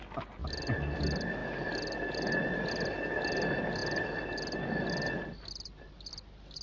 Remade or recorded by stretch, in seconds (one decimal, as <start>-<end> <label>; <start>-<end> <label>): 0.0-6.6 recorded